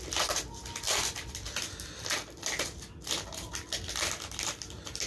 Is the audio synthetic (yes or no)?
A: no